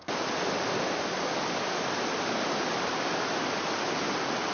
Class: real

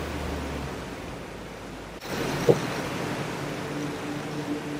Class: real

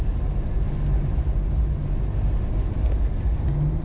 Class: real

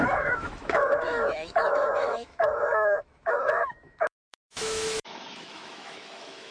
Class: fake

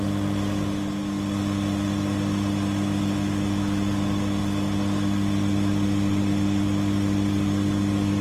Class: real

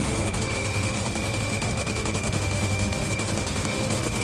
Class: fake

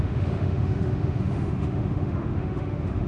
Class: fake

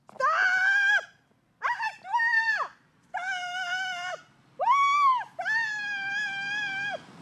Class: real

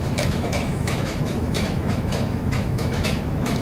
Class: fake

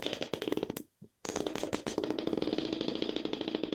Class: fake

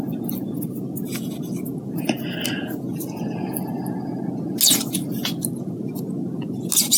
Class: real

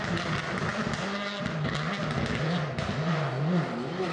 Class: real